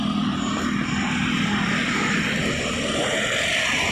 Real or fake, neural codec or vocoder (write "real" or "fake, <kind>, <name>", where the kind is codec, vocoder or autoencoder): real